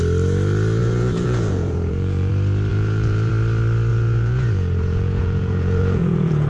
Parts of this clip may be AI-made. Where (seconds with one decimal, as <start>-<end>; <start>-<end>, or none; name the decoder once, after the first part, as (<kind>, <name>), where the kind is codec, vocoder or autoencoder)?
0.8-2.3 (vocoder, Vocos); 2.7-3.3; 3.9-6.5